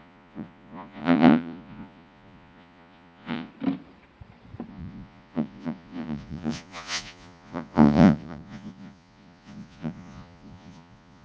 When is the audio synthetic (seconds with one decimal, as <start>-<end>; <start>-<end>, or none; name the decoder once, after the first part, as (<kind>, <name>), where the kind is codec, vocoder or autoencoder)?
0.0-3.5 (vocoder, Vocos); 4.7-11.2